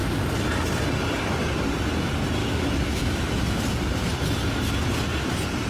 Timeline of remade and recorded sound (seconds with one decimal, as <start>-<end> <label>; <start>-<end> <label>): 0.0-2.4 recorded; 2.4-3.6 remade; 3.6-5.7 recorded